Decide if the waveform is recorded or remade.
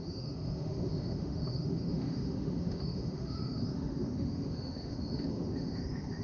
remade